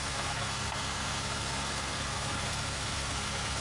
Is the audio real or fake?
fake